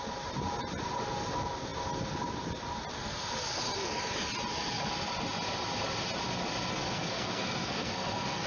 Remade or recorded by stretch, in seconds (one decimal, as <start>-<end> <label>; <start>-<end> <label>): 0.0-6.7 recorded; 6.7-8.5 remade